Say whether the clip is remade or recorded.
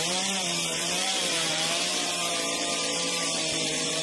remade